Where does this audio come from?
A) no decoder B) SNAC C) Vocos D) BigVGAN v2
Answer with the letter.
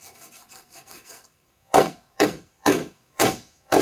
B